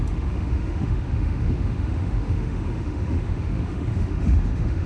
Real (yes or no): no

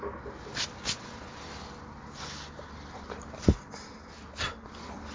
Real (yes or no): yes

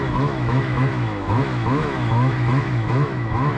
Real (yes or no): no